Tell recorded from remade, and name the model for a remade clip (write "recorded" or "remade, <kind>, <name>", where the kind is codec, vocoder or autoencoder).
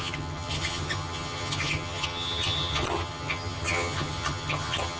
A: remade, vocoder, HiFi-GAN